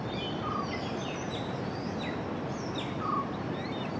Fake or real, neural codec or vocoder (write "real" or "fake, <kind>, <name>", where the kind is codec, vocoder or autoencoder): fake, vocoder, BigVGAN v2